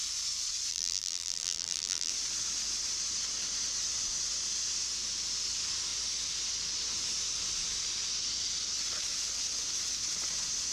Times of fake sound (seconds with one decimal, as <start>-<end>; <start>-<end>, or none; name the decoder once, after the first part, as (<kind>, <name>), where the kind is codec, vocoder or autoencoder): 0.7-2.1 (vocoder, BigVGAN v2)